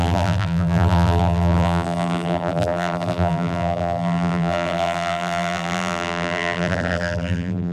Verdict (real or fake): fake